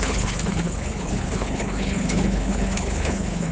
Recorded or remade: remade